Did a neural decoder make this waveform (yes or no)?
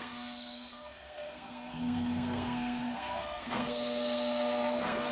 yes